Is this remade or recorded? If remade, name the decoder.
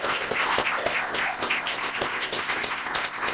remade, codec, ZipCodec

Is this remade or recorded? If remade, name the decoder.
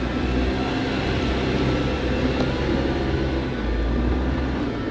recorded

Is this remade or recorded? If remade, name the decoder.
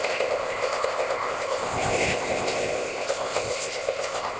remade, codec, ZipCodec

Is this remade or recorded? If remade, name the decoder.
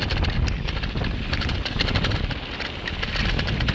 recorded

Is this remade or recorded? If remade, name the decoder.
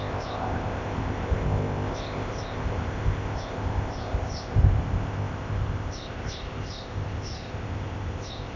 remade, codec, ZipCodec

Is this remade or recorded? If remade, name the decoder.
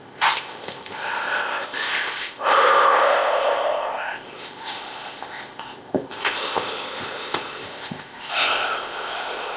remade, codec, ZipCodec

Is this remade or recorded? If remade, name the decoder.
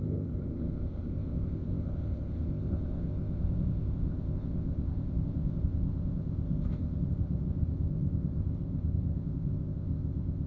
remade, codec, ZipCodec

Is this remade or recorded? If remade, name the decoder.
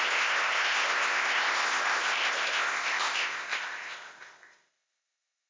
remade, codec, ZipCodec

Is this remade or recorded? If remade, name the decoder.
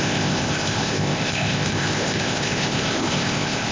remade, codec, ZipCodec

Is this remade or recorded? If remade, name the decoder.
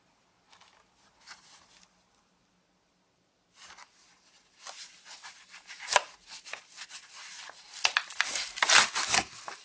recorded